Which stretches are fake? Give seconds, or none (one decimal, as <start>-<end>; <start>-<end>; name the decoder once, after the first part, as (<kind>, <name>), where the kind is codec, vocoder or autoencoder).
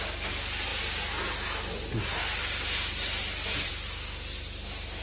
none